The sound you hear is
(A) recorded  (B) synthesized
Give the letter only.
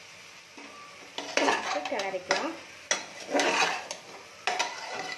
A